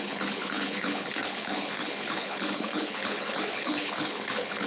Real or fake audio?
fake